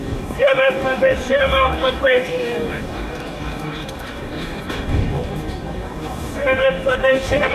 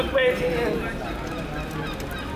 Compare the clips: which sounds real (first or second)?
second